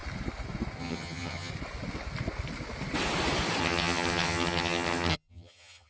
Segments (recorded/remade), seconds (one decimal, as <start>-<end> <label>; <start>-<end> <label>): 0.0-0.8 recorded; 0.8-1.5 remade; 1.5-3.6 recorded; 3.6-5.9 remade